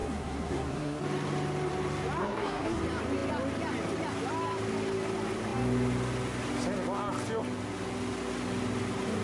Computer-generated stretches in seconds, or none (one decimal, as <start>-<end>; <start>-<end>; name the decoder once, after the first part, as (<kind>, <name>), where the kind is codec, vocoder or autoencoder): 0.0-1.0 (codec, SNAC); 2.2-2.8